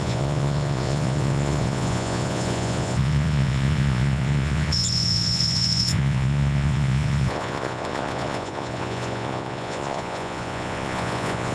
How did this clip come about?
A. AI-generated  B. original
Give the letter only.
A